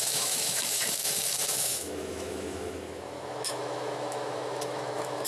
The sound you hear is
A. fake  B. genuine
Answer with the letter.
A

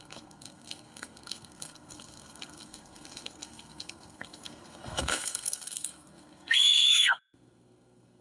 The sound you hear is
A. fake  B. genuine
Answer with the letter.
A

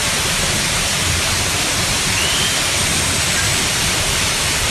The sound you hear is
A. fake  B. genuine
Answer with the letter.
B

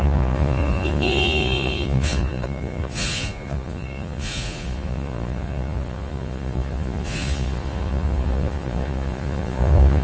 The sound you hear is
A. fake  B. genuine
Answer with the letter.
A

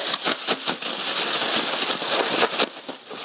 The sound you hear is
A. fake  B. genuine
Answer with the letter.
B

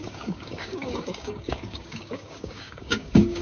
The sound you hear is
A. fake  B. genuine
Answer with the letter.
A